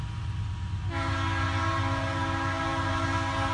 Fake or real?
real